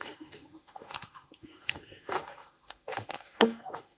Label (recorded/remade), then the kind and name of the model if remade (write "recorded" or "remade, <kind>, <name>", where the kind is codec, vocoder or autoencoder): remade, autoencoder, DAC-VAE